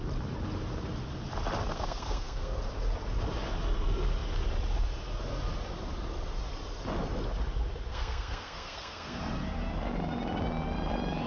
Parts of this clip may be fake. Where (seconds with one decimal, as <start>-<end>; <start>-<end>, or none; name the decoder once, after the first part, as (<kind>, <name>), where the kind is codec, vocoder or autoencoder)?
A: 1.6-2.6 (codec, SNAC); 7.9-9.2

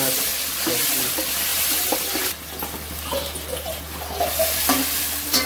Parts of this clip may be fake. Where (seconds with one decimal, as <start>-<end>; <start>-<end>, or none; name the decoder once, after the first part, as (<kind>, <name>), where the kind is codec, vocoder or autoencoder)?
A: none

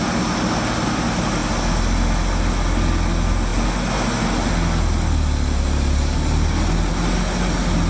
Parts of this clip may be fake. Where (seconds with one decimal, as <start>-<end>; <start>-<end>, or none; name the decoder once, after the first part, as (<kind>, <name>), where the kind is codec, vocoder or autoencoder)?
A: none